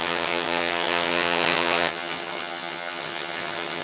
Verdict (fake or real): fake